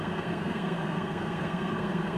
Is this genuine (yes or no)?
no